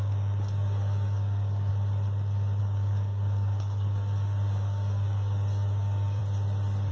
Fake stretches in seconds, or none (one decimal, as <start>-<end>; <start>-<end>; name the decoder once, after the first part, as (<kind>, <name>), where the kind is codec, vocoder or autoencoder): 0.0-1.7 (codec, DAC); 2.6-6.2